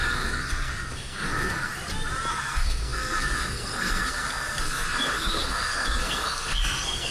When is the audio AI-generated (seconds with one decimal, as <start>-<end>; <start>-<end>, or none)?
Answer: 0.0-1.7; 2.3-7.1